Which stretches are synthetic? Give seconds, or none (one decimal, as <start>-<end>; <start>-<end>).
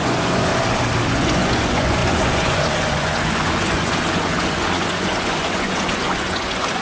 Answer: 0.0-0.5; 1.1-6.8